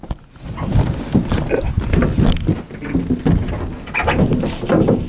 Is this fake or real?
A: real